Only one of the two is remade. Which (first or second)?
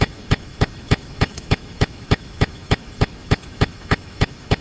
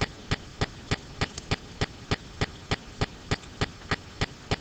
first